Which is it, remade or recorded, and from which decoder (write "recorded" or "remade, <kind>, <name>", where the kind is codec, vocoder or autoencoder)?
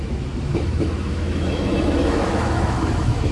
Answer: remade, autoencoder, DAC-VAE